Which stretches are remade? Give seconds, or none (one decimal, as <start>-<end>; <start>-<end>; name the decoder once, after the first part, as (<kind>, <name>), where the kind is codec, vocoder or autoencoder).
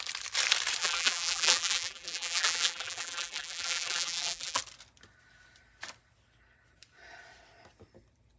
0.8-4.6 (vocoder, BigVGAN v2)